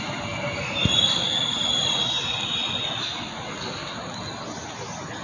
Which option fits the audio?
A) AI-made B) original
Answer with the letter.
B